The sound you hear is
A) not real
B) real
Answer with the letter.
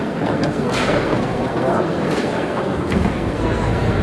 A